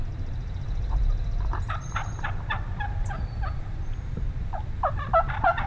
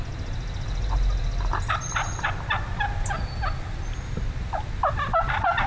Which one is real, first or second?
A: second